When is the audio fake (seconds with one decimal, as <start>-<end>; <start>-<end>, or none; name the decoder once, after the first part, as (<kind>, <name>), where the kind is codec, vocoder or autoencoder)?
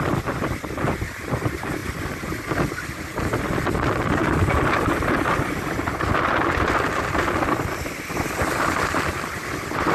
0.0-1.8 (vocoder, BigVGAN v2); 3.4-4.2; 5.2-9.9